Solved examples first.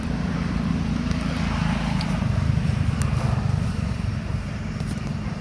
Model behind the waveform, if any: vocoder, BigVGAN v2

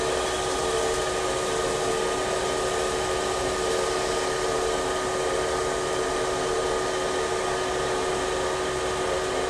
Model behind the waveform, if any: none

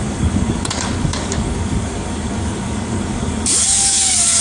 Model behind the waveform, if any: codec, DAC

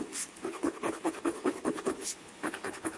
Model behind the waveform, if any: codec, HILCodec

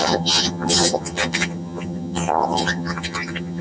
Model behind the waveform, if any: vocoder, HiFi-GAN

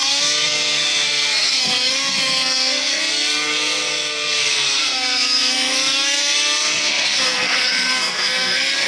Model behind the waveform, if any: codec, SNAC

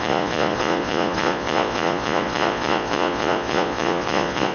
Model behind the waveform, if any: vocoder, Vocos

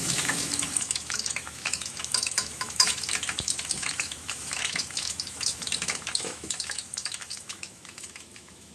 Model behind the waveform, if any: autoencoder, DAC-VAE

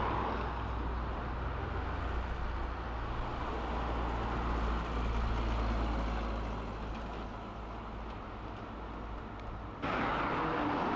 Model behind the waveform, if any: none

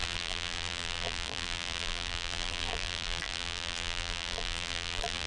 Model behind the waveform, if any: vocoder, BigVGAN v2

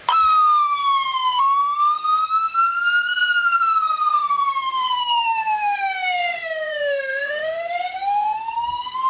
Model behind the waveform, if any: codec, SNAC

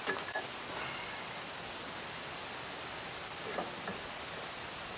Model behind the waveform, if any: none